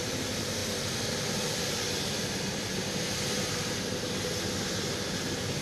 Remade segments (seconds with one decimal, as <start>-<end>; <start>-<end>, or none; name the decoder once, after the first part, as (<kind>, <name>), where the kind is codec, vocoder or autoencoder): 0.6-4.0 (vocoder, BigVGAN v2)